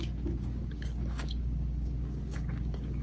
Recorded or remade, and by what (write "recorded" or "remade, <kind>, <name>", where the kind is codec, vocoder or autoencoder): remade, codec, DAC